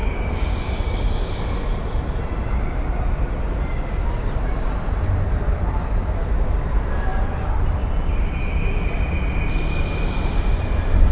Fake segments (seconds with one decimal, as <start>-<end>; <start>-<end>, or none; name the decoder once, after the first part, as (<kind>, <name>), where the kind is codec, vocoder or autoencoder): 0.0-1.3 (codec, DAC)